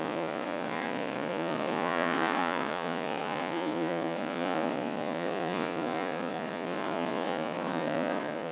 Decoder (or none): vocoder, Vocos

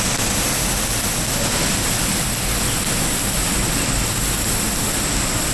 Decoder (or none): none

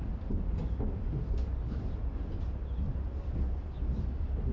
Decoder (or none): none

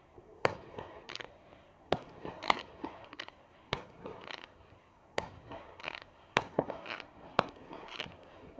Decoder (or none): codec, SNAC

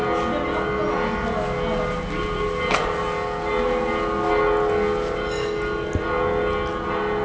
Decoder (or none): none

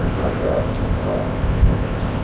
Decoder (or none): codec, ZipCodec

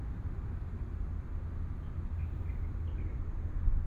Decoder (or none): none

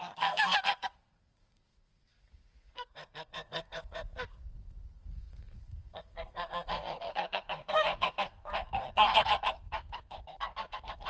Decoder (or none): codec, SNAC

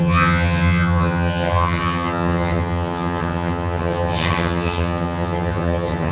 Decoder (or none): vocoder, HiFi-GAN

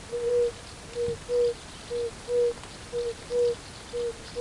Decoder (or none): none